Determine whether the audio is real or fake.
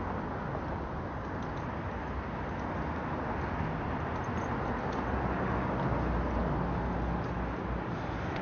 real